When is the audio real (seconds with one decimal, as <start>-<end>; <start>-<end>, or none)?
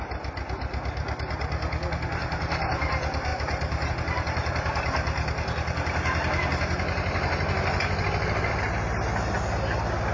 0.0-3.3; 3.9-10.1